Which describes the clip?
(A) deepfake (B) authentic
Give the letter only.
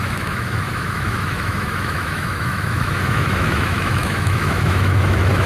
A